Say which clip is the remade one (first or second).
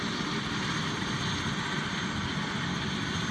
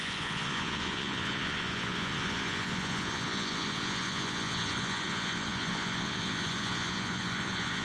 second